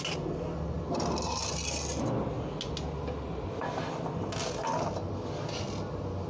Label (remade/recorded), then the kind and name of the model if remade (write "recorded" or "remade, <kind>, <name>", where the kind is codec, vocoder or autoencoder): recorded